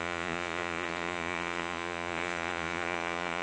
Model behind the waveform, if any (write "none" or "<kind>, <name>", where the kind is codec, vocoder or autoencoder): vocoder, Vocos